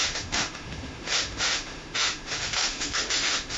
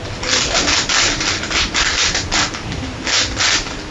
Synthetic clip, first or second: first